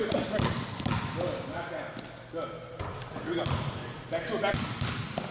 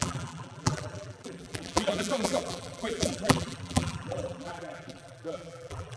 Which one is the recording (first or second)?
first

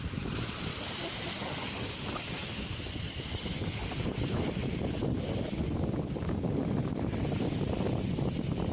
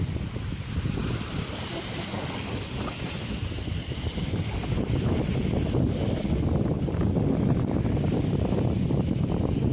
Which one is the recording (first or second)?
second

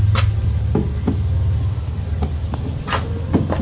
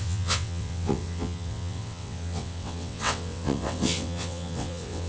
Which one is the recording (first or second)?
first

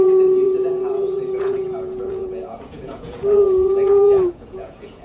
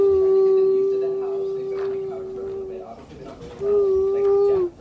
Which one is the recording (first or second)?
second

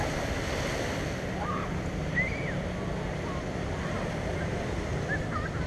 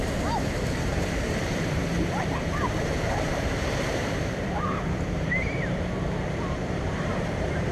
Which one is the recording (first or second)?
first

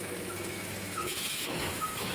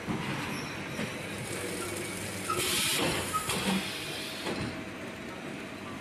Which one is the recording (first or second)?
second